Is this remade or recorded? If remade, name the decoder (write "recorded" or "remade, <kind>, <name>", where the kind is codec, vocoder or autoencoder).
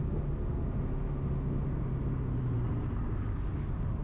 recorded